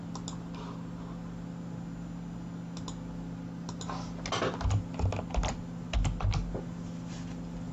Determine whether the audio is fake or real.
real